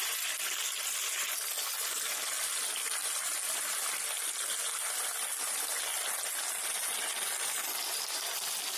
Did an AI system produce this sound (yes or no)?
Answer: no